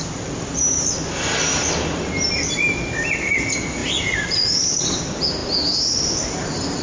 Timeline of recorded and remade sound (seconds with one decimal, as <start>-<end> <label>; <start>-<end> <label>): 0.0-3.8 recorded; 3.8-4.8 remade; 4.8-6.8 recorded